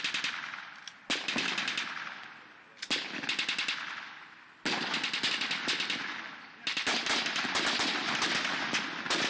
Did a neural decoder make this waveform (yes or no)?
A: no